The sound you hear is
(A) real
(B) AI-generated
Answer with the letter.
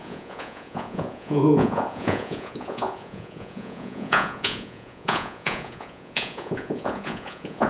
B